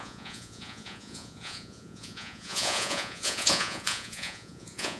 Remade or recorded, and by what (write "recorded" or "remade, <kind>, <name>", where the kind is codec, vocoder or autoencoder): remade, vocoder, Vocos